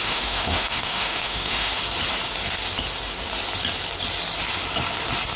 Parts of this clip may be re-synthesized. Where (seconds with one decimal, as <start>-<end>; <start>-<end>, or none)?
0.0-1.7